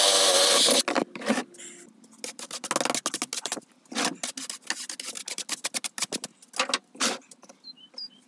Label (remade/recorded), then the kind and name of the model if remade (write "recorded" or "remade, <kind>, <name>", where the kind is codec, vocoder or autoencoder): recorded